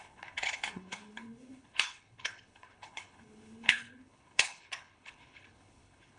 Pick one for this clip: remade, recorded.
remade